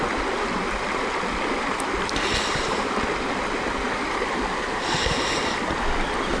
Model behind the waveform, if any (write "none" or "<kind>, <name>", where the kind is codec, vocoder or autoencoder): none